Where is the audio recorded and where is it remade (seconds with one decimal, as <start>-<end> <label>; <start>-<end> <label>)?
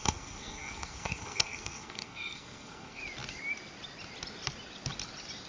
0.0-3.0 remade; 3.0-5.5 recorded